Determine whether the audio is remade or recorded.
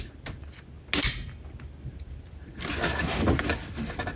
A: recorded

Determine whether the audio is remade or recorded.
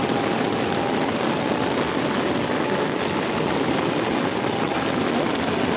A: recorded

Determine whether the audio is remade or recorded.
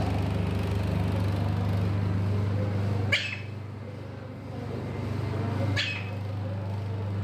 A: recorded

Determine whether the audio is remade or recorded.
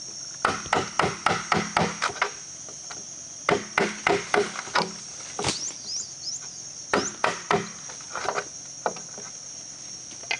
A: recorded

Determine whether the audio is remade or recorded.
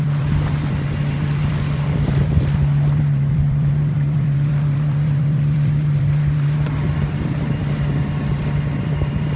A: remade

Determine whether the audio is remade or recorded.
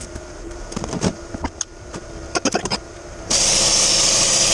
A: remade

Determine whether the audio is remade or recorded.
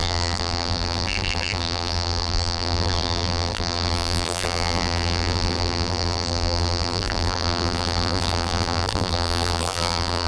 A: remade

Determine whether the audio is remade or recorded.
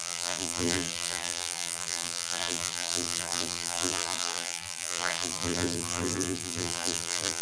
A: remade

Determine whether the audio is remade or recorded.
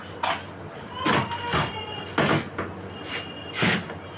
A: recorded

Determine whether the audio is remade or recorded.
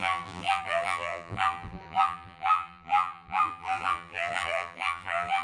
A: remade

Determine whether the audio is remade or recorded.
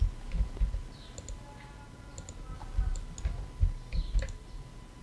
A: recorded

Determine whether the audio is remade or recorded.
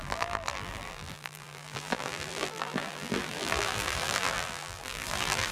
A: remade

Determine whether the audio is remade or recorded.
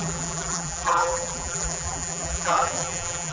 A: remade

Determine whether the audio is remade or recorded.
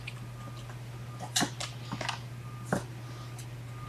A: recorded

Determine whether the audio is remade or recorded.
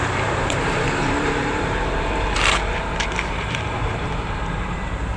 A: remade